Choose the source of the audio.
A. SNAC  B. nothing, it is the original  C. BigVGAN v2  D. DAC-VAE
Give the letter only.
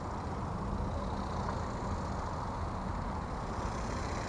B